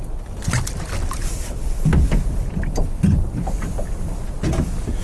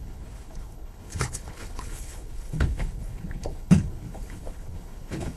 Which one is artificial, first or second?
second